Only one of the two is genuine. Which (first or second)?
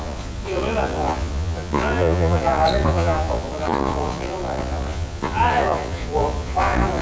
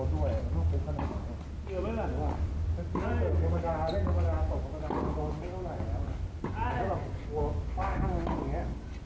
second